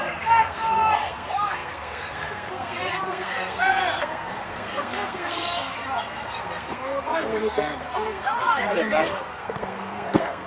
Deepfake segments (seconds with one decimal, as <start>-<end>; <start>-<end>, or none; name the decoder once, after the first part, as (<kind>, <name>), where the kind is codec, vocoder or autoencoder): 0.0-10.5 (codec, SNAC)